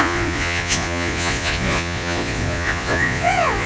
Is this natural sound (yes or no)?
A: no